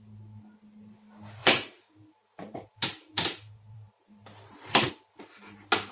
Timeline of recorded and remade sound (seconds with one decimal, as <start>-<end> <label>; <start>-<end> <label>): 0.0-1.4 recorded; 1.4-4.9 remade; 4.9-5.9 recorded